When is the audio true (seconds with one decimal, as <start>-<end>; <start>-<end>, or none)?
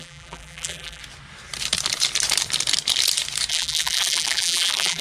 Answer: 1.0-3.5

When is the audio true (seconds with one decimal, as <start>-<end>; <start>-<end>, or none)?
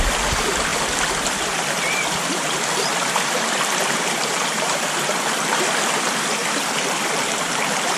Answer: none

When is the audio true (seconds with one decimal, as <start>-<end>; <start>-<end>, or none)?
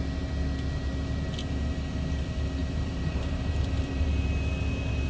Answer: 0.0-2.6; 4.1-5.1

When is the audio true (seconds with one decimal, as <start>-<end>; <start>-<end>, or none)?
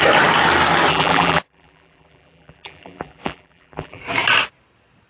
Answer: 0.0-0.9; 4.0-5.1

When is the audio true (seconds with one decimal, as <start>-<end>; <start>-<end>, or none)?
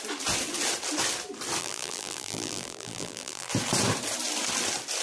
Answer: 0.0-1.6; 3.5-5.0